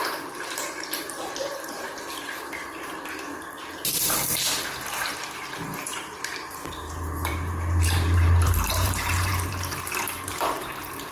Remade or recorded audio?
remade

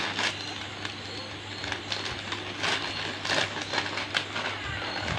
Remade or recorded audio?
recorded